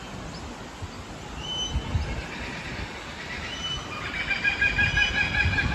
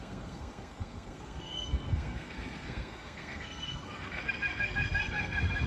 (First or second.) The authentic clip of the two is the first